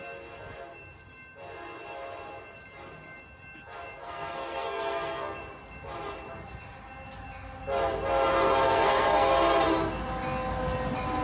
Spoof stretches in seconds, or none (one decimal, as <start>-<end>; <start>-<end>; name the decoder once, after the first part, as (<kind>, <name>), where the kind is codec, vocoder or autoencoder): 4.0-5.4 (codec, SNAC); 8.3-9.3